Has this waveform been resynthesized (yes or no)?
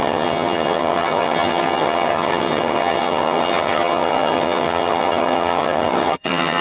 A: yes